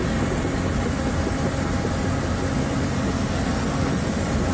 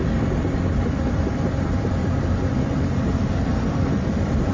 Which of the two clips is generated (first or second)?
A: second